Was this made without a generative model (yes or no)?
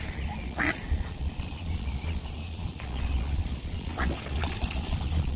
no